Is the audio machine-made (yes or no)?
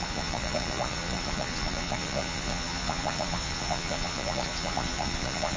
yes